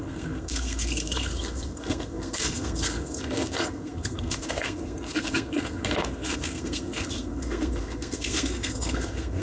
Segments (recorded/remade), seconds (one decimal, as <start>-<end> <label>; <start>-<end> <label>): 0.0-9.4 remade